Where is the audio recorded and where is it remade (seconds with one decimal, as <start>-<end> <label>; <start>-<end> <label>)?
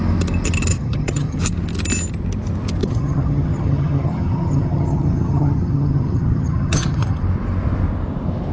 0.0-0.7 recorded; 0.7-1.4 remade; 1.4-2.8 recorded; 2.8-7.2 remade; 7.2-8.5 recorded